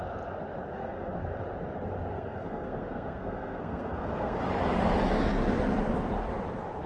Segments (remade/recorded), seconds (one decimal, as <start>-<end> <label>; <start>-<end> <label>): 0.0-0.7 recorded; 0.7-1.2 remade; 1.2-2.1 recorded; 2.1-4.4 remade; 4.4-6.9 recorded